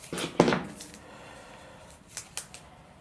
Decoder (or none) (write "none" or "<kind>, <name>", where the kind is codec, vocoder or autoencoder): none